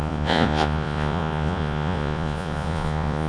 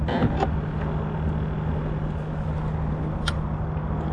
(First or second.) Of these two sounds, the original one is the second